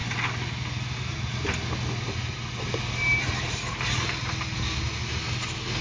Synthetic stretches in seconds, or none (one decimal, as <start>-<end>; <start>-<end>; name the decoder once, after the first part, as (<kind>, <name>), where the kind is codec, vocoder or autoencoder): none